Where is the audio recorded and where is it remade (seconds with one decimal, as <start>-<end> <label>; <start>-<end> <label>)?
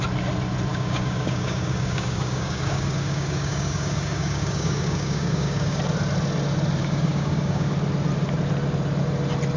0.0-0.7 recorded; 0.7-5.8 remade; 5.8-6.8 recorded; 6.8-7.7 remade; 7.7-9.6 recorded